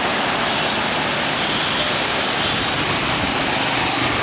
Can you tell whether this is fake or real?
real